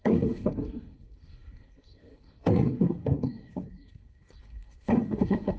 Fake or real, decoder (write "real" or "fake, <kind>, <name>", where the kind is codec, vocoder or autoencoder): fake, codec, SNAC